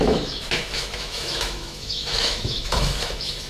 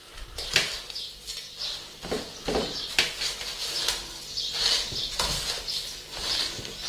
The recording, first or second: second